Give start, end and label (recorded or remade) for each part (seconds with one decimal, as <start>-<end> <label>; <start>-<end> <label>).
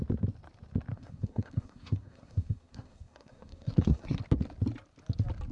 0.0-0.9 recorded; 0.9-4.2 remade; 4.2-5.5 recorded